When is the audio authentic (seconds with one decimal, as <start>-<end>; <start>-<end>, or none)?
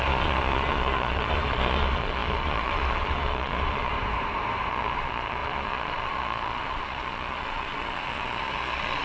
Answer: 3.9-4.7